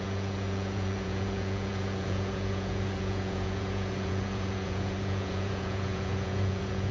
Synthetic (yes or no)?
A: yes